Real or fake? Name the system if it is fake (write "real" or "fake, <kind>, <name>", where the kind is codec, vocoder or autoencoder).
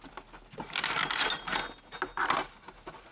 real